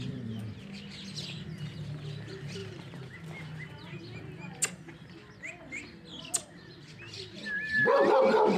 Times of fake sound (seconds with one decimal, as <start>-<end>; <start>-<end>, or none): none

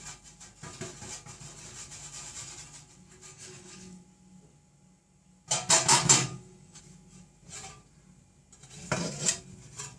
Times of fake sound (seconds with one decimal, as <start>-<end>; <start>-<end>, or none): 3.3-4.0; 5.9-6.8

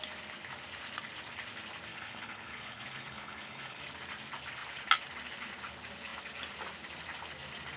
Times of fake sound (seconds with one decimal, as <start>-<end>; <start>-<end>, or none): 1.9-3.8

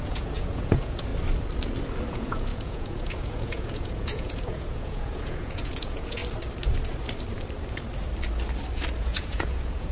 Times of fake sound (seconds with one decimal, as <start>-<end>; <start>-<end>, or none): 0.0-1.1; 2.1-6.2; 9.0-9.9

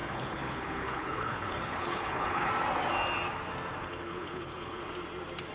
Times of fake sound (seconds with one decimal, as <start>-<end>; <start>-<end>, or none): 0.0-2.5; 3.8-4.8

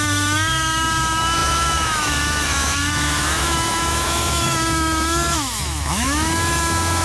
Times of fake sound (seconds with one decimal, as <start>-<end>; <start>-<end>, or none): 0.0-7.0